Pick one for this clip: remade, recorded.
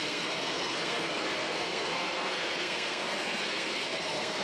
remade